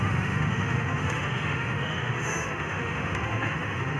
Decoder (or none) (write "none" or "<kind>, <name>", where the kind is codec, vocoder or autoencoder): autoencoder, DAC-VAE